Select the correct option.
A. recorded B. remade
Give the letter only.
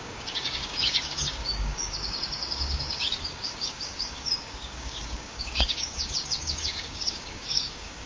B